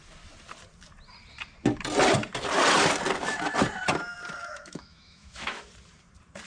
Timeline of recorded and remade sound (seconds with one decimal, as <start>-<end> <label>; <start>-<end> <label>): 0.0-4.4 recorded; 4.4-5.7 remade; 5.7-6.5 recorded